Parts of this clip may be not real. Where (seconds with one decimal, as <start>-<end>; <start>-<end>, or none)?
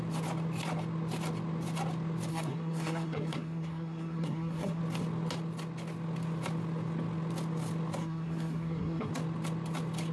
2.3-4.8; 8.0-9.1